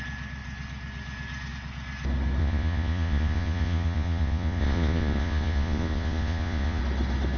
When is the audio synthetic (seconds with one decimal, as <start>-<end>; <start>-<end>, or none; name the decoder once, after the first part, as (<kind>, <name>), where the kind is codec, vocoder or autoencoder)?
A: 2.4-6.8 (vocoder, Vocos)